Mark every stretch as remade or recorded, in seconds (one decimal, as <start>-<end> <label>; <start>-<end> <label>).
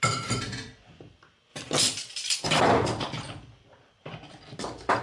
0.0-5.0 remade